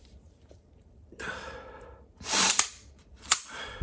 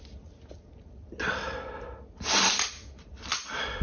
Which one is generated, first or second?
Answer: first